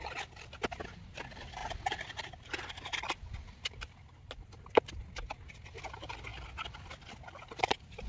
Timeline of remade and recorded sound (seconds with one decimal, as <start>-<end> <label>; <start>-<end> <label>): 0.0-8.1 recorded